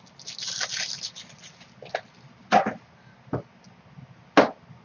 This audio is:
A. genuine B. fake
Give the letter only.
A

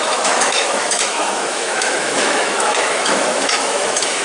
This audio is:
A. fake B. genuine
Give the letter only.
A